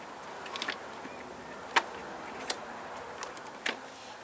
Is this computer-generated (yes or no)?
no